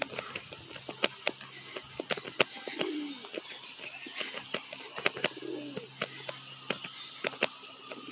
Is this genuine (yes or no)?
yes